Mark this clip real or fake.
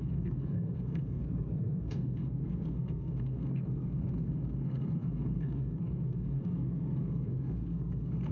fake